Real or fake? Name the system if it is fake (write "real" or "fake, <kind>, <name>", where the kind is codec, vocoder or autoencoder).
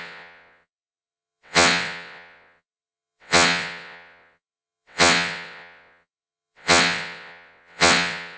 fake, vocoder, WaveNeXt